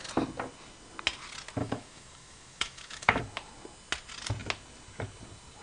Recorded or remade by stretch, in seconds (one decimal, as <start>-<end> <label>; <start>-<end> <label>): 0.0-1.6 recorded; 1.6-3.2 remade; 3.2-5.6 recorded